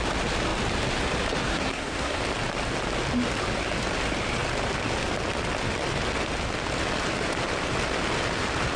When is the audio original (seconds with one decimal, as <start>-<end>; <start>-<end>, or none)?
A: 0.0-1.5; 2.2-8.8